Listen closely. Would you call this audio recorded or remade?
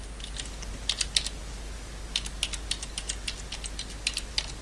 recorded